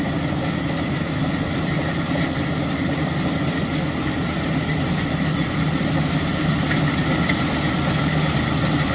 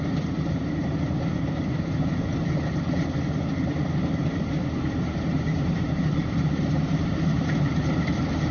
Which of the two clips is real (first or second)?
first